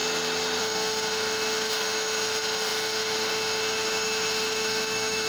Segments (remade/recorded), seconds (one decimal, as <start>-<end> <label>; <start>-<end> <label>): 0.0-0.6 recorded; 0.6-5.3 remade